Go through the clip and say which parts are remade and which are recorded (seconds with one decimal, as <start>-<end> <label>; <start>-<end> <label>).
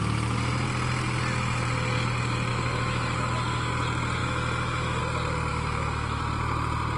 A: 0.0-2.5 recorded; 2.5-3.7 remade; 3.7-4.2 recorded; 4.2-5.0 remade; 5.0-5.5 recorded; 5.5-6.2 remade; 6.2-7.0 recorded